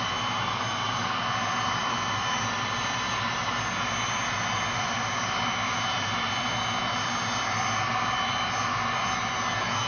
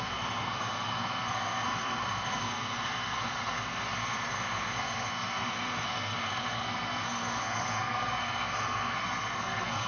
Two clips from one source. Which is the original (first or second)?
first